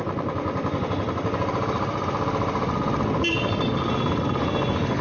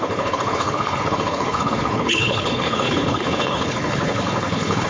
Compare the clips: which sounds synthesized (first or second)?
second